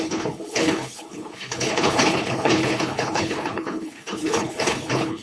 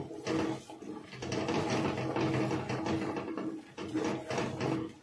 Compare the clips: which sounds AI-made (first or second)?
first